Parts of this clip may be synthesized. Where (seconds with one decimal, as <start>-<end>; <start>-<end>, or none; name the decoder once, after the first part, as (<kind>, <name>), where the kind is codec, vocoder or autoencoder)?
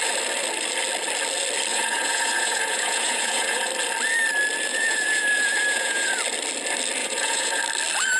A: 1.7-3.7 (vocoder, Vocos); 4.7-6.1; 7.0-7.6